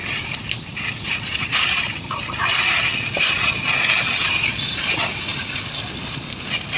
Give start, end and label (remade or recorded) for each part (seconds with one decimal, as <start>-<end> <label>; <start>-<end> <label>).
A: 0.0-4.0 remade; 4.0-5.3 recorded; 5.3-6.0 remade; 6.0-6.8 recorded